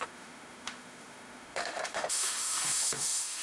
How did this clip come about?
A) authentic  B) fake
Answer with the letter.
B